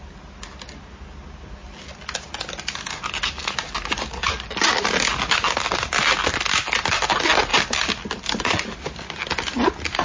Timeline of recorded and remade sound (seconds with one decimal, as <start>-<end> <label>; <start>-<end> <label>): 0.0-10.0 recorded